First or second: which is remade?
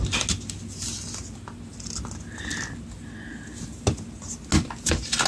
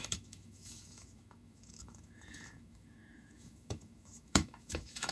second